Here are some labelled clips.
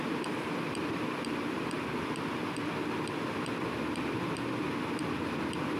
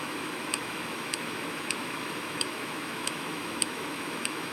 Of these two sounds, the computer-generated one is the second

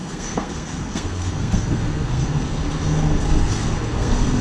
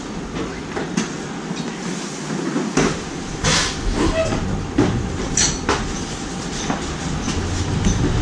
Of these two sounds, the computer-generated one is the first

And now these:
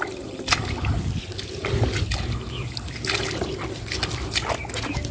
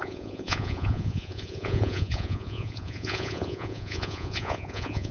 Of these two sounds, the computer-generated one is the second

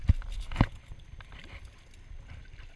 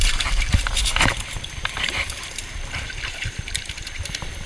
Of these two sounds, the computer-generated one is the second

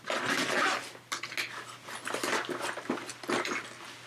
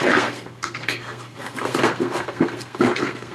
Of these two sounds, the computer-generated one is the second